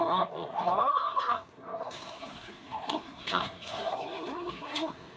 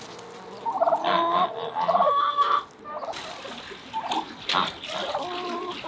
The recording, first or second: second